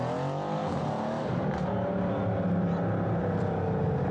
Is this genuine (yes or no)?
yes